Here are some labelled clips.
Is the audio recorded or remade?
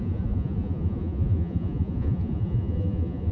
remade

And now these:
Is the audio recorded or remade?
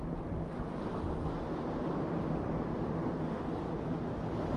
recorded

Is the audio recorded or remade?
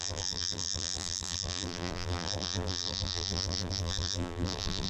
remade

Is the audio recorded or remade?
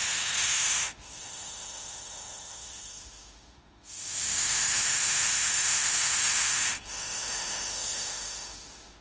remade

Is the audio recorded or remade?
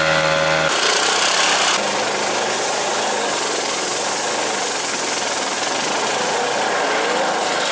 recorded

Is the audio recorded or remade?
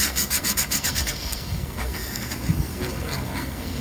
remade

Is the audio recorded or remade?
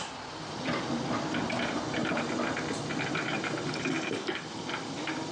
recorded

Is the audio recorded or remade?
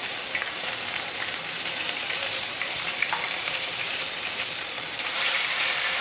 remade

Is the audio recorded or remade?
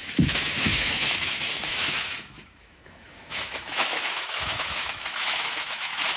remade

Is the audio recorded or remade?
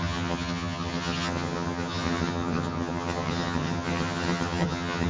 remade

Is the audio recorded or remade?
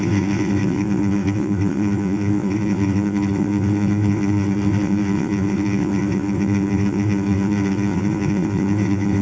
remade